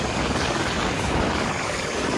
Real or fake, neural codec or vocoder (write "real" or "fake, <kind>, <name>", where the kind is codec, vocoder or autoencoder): fake, codec, DAC